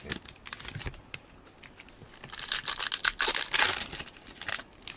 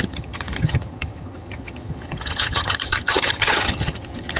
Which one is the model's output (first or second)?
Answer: second